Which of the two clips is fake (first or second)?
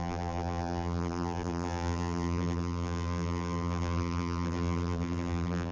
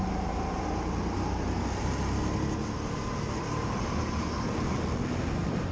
first